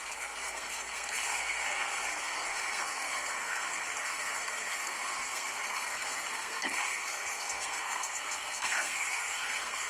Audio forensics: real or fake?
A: fake